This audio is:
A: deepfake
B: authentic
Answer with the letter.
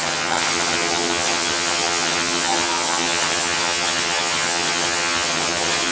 A